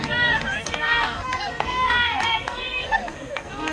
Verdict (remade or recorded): remade